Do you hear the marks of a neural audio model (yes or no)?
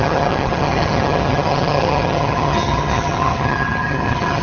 yes